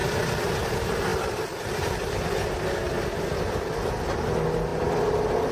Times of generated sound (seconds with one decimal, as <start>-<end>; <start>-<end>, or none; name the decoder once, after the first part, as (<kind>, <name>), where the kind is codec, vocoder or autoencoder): none